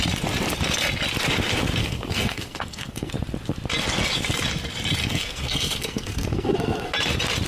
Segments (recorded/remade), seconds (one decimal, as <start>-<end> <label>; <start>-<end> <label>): 0.0-1.8 recorded; 1.8-3.1 remade; 3.1-5.0 recorded; 5.0-6.9 remade; 6.9-7.5 recorded